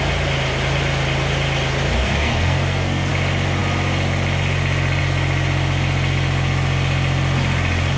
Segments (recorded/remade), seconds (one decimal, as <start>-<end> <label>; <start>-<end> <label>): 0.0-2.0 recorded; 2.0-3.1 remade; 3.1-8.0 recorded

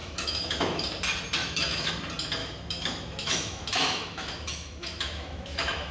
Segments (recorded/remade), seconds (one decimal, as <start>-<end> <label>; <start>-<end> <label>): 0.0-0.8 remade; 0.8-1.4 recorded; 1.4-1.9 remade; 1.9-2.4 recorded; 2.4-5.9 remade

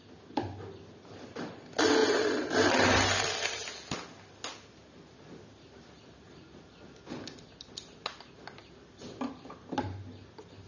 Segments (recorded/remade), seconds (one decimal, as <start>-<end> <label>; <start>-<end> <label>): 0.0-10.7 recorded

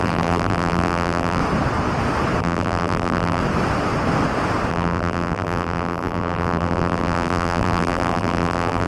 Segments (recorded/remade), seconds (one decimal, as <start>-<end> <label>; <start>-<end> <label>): 0.0-1.4 remade; 1.4-2.4 recorded; 2.4-3.4 remade; 3.4-4.7 recorded; 4.7-8.9 remade

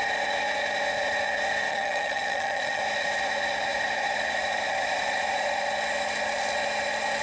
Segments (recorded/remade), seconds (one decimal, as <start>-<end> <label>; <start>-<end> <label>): 0.0-1.7 recorded; 1.7-2.8 remade; 2.8-7.2 recorded

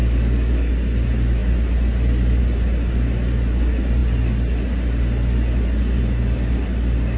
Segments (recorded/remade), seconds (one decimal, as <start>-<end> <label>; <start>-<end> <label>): 0.0-0.7 remade; 0.7-7.2 recorded